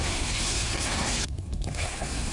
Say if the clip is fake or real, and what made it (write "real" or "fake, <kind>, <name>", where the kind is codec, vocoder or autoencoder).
fake, codec, SNAC